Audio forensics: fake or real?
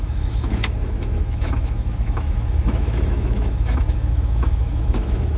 fake